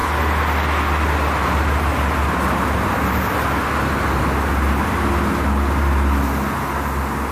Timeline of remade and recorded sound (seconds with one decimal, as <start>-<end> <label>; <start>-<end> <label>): 0.0-7.3 recorded